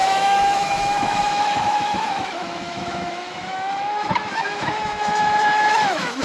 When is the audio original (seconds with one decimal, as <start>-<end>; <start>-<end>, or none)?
none